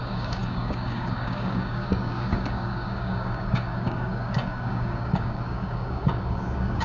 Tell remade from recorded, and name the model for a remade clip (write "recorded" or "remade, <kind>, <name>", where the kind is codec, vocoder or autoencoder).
remade, codec, DAC